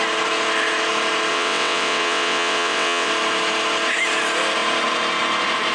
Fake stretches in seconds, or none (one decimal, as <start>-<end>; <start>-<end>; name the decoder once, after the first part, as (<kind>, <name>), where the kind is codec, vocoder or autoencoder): 1.3-3.1 (vocoder, WaveNeXt)